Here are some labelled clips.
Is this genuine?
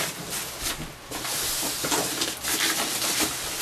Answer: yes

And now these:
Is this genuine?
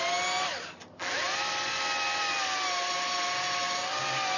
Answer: yes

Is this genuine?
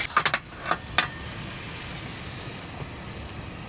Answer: yes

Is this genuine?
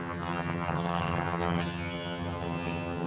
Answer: no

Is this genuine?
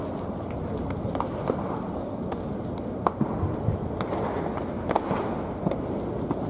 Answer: yes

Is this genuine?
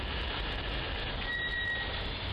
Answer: yes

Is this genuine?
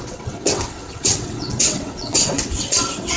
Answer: no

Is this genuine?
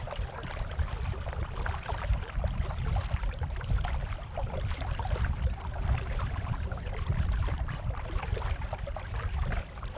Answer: no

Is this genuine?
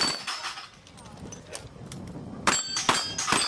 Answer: yes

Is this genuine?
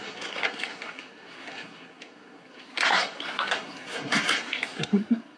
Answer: no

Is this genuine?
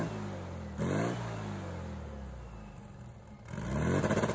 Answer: yes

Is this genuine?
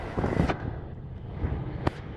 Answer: no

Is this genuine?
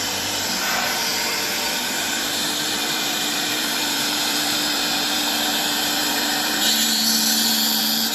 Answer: no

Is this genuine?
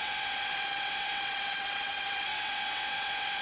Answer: no